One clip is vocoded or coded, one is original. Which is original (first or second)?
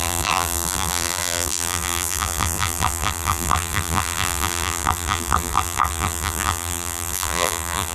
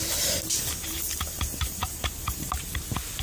second